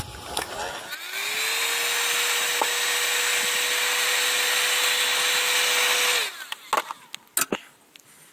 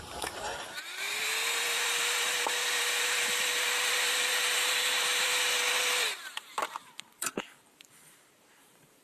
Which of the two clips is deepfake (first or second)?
second